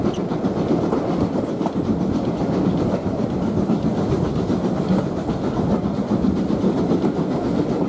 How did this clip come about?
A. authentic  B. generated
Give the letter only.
A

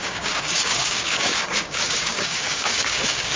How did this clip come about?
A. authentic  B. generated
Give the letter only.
B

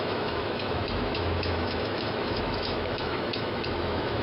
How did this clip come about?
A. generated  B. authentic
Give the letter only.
A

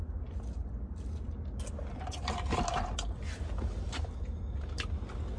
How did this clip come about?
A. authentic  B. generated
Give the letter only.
A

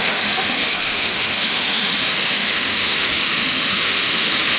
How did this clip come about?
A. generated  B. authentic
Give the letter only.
A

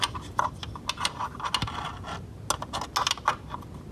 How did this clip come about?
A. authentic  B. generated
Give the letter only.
A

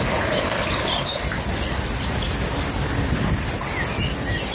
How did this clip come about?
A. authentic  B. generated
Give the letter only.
A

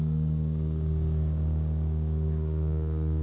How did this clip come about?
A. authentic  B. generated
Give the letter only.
B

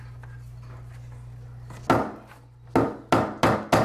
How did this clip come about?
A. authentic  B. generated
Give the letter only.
A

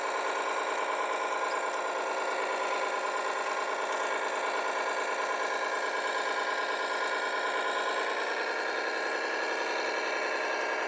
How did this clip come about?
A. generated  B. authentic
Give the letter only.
B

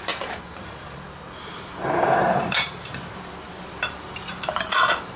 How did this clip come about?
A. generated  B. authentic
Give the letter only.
A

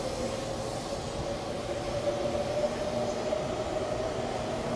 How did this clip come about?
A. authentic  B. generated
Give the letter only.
A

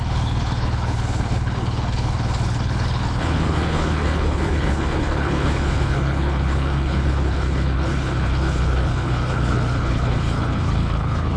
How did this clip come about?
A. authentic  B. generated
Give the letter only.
B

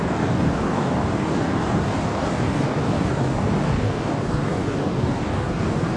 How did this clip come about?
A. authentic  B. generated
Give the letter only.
B